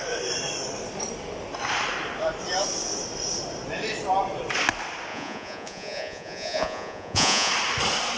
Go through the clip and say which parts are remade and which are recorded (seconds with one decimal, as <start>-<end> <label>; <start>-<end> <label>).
0.0-5.1 recorded; 5.1-7.5 remade; 7.5-8.2 recorded